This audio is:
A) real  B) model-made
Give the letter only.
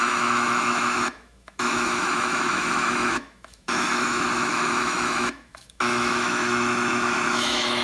B